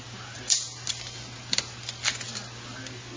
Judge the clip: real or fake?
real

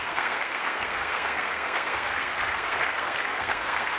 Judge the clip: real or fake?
fake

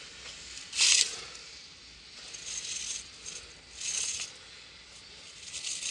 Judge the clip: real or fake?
real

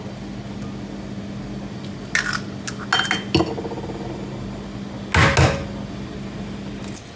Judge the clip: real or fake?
real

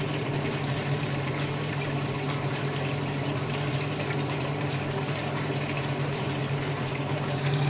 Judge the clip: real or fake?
fake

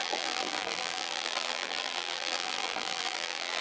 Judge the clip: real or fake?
fake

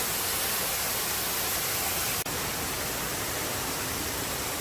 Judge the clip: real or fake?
real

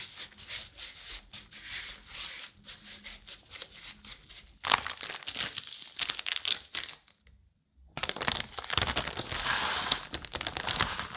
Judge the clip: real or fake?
real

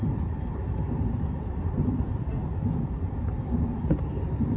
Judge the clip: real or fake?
real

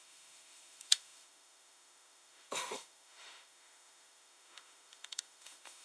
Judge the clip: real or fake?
fake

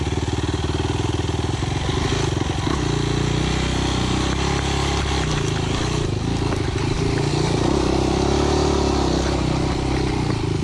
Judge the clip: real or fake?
real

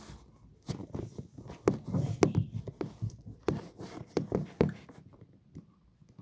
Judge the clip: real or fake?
real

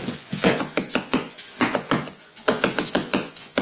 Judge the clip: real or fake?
fake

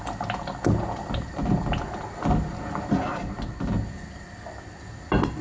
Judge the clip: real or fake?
real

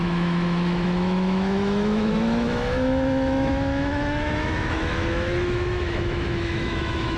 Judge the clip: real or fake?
fake